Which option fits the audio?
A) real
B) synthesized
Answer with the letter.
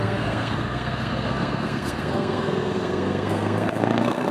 B